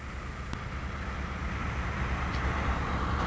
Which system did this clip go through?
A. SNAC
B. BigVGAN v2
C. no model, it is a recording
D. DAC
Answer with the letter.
C